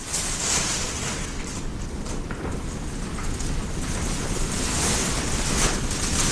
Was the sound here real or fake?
real